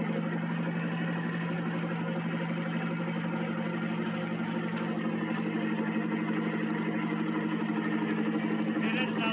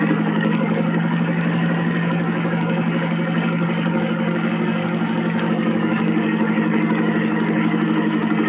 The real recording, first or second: first